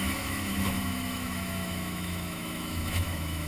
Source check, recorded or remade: remade